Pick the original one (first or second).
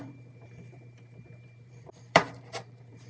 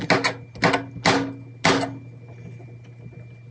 second